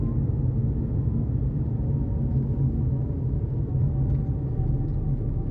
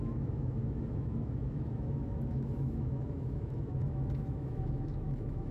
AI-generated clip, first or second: second